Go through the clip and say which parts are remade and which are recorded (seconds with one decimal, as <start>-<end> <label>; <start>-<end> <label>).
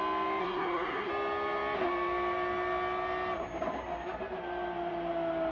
0.0-0.4 recorded; 0.4-1.1 remade; 1.1-5.5 recorded